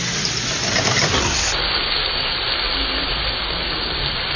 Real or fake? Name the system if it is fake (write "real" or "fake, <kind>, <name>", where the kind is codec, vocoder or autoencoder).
real